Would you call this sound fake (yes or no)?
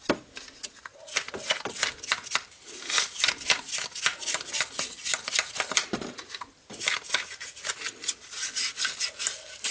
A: no